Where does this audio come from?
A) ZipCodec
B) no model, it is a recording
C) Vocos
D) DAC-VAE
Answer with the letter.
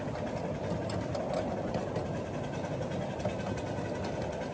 B